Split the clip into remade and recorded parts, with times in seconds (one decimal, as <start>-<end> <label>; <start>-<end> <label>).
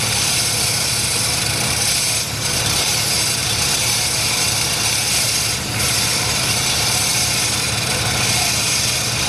0.0-3.4 recorded; 3.4-3.9 remade; 3.9-9.3 recorded